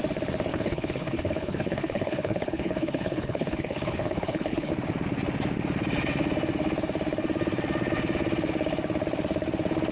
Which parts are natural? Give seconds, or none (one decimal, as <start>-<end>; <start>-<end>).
0.0-0.5; 4.7-9.9